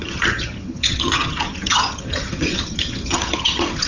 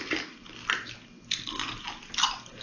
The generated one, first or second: first